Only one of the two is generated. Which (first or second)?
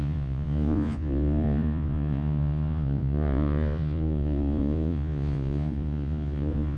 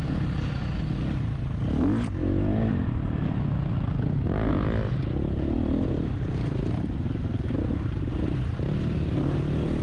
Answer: first